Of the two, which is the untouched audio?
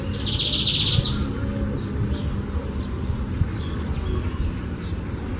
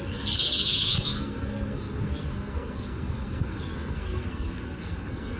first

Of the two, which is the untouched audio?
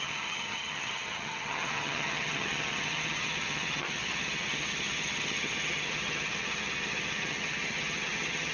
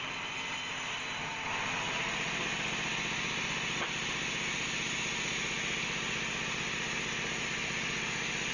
second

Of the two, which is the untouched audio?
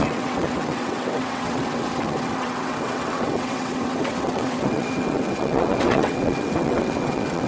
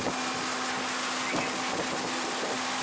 second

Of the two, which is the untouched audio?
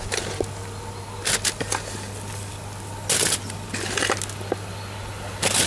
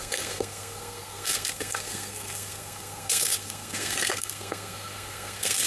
first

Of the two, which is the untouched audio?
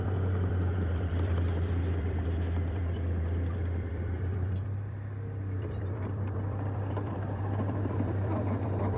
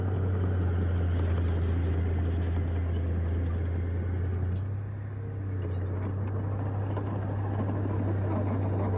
second